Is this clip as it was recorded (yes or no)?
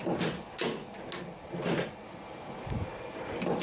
yes